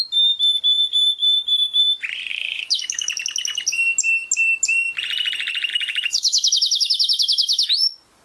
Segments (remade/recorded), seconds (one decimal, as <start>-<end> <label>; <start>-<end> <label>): 0.0-1.2 recorded; 1.2-1.8 remade; 1.8-2.3 recorded; 2.3-3.1 remade; 3.1-5.7 recorded; 5.7-7.7 remade; 7.7-8.2 recorded